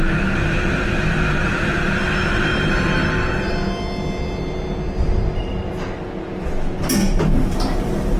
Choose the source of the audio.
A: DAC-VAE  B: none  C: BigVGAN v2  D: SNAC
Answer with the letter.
B